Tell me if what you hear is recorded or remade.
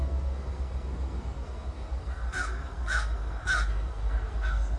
remade